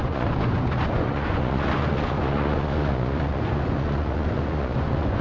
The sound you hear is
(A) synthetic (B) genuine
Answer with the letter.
A